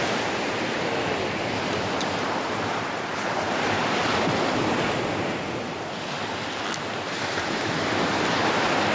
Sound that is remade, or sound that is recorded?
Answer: recorded